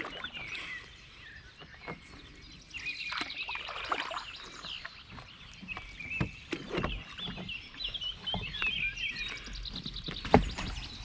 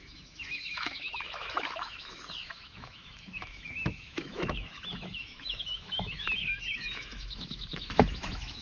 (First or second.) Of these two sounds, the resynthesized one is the second